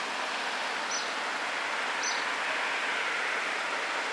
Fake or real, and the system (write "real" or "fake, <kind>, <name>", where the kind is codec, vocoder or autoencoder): real